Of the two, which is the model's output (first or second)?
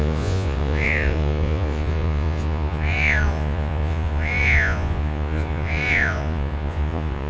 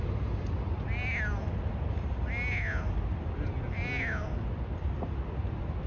first